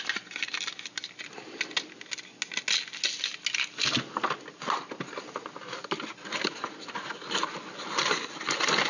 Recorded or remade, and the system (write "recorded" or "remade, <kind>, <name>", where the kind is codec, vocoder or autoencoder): recorded